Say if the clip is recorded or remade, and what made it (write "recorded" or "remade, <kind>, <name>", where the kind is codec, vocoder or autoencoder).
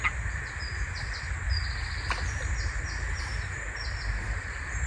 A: recorded